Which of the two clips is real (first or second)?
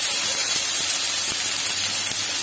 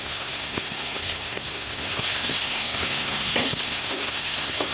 first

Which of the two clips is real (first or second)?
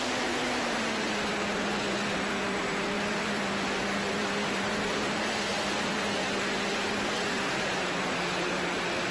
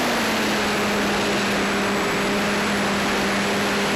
second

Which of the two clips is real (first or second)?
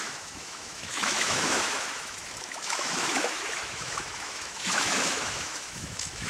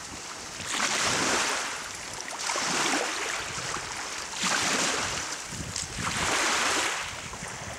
second